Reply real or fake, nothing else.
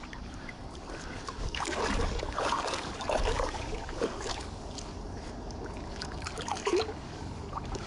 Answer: fake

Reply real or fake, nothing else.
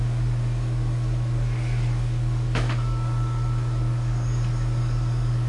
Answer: fake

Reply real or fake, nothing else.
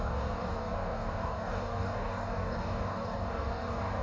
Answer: fake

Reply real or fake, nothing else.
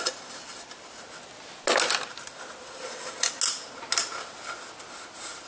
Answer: real